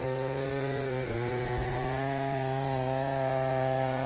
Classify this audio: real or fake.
fake